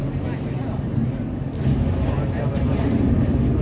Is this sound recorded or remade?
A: recorded